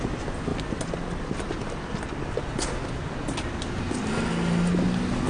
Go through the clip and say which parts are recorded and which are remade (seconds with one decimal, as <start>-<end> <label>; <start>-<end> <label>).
0.0-5.3 recorded